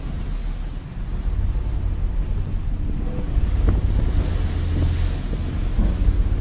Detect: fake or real real